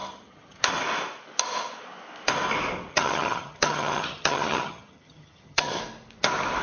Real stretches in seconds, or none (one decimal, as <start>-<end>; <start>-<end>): 0.6-2.9; 5.8-6.6